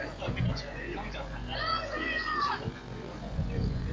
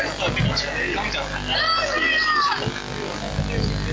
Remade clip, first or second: first